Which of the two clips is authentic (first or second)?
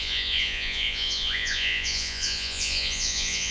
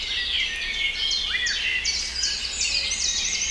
second